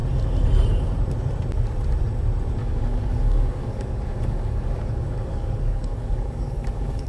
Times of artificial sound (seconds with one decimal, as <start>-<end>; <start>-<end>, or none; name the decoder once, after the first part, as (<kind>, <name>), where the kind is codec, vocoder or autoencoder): 2.6-7.1 (codec, DAC)